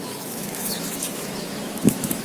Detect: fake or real fake